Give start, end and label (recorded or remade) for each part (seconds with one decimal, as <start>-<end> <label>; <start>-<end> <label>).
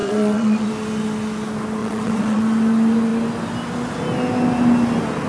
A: 0.0-0.7 remade; 0.7-1.8 recorded; 1.8-2.4 remade; 2.4-5.3 recorded